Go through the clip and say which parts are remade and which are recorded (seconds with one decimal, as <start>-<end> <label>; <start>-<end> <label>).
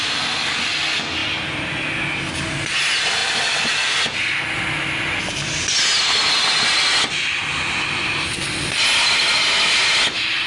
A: 0.0-10.5 recorded